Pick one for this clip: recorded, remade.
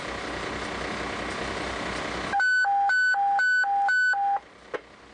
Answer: recorded